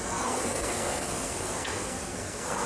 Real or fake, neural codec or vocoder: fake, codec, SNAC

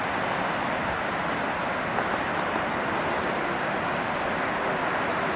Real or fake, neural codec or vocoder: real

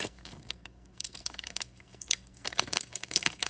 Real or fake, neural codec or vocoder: fake, codec, SNAC